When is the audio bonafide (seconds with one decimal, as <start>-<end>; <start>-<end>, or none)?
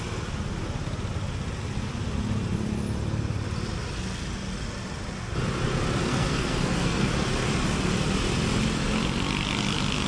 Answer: 0.0-6.0; 7.1-10.1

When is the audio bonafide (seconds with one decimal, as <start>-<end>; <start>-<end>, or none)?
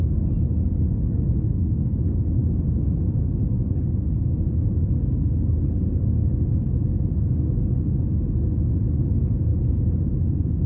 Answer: 0.0-9.5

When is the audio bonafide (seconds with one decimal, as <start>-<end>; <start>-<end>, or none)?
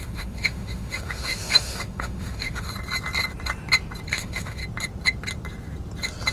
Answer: 2.7-4.1; 4.6-6.3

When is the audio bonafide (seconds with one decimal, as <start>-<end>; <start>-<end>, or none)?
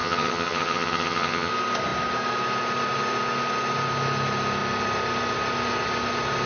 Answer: 1.5-6.5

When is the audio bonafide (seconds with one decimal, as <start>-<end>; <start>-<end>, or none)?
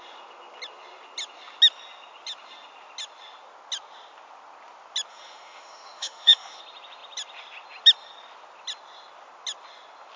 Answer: 0.0-5.1; 6.6-10.2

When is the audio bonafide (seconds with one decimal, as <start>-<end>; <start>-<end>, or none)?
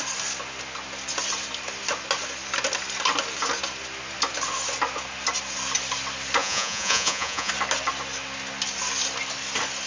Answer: 0.0-6.4; 7.5-9.9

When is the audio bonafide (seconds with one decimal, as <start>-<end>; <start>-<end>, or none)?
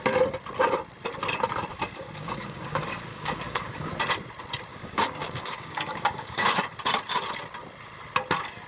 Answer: 0.0-1.7; 3.9-4.7; 6.6-8.7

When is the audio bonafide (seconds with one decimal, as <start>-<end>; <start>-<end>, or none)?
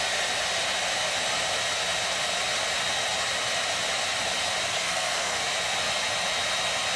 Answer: 0.0-4.7; 5.4-7.0